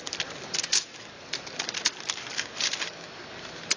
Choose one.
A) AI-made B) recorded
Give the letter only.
B